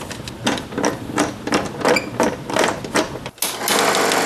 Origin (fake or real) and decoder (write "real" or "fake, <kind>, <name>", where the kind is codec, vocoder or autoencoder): real